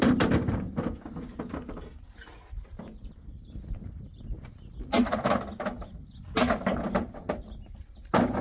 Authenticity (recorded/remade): recorded